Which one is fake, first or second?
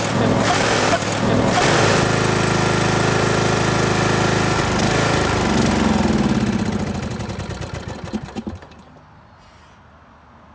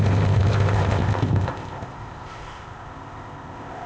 second